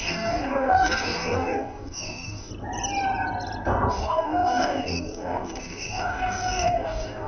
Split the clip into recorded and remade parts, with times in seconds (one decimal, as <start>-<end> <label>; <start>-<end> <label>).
0.0-2.5 remade; 2.5-3.9 recorded; 3.9-7.3 remade